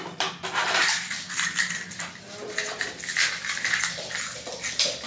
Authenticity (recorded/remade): recorded